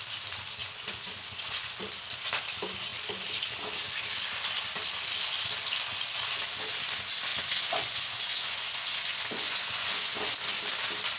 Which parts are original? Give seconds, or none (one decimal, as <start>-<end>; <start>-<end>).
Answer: 0.0-0.6; 1.8-7.3; 10.6-11.2

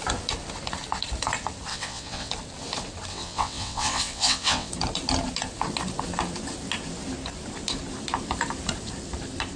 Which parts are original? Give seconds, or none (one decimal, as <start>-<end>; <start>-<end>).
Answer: 0.0-1.7; 2.3-3.1; 4.7-9.6